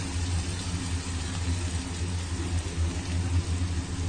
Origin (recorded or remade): recorded